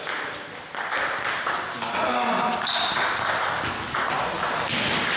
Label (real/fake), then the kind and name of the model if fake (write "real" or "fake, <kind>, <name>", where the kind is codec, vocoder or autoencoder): real